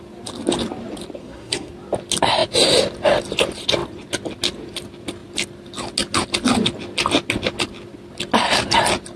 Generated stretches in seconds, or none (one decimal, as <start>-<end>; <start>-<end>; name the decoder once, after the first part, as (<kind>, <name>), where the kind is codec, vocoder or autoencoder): 1.2-1.7 (codec, SNAC)